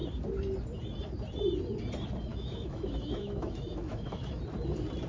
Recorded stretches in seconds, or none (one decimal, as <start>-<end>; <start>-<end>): 0.0-2.3; 4.4-5.1

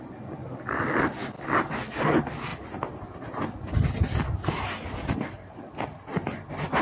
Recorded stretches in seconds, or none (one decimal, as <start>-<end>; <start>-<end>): 0.0-0.4; 1.0-6.8